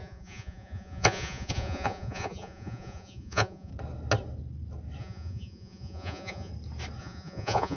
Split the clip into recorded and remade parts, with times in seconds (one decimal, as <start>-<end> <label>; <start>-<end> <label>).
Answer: 0.0-3.7 remade; 3.7-5.0 recorded; 5.0-6.5 remade; 6.5-7.0 recorded; 7.0-7.8 remade